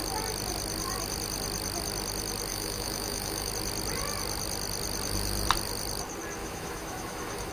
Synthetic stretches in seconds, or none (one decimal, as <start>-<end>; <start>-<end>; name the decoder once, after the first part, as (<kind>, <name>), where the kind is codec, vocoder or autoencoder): 2.5-3.5 (autoencoder, DAC-VAE); 6.4-7.5